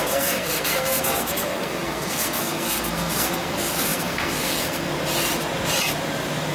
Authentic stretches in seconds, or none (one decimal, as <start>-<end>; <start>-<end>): 4.9-6.5